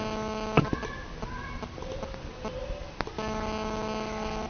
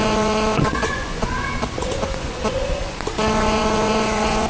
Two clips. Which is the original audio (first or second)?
first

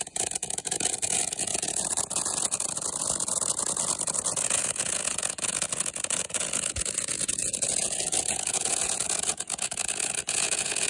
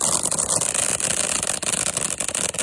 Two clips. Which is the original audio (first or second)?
second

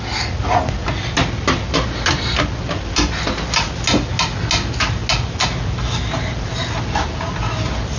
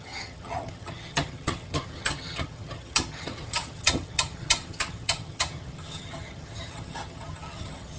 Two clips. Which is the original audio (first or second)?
first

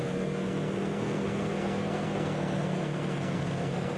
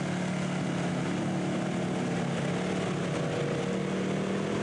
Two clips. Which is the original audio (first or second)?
second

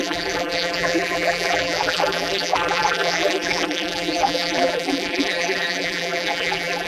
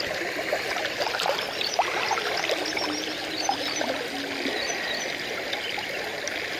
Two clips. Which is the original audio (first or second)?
second